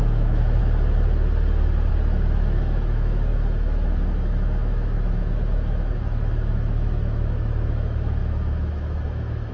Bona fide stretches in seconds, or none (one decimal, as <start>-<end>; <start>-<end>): 0.6-1.9